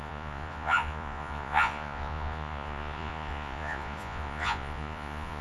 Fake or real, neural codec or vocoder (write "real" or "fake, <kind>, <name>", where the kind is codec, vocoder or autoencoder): fake, vocoder, Vocos